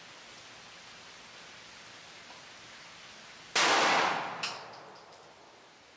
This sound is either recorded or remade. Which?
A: recorded